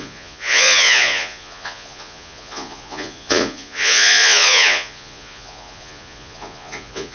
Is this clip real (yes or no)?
no